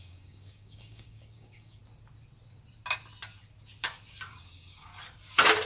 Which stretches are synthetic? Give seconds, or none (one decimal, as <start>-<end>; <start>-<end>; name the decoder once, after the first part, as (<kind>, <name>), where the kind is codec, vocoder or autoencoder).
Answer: 0.0-1.8 (codec, DAC); 4.3-4.9